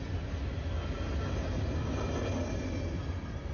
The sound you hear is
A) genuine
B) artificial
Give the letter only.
A